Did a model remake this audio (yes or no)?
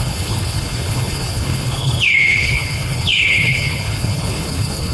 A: yes